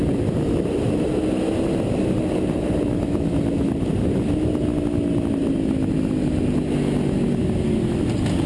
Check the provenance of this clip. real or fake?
real